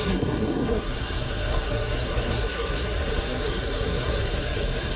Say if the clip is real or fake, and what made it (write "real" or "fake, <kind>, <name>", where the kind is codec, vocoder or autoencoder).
fake, codec, SNAC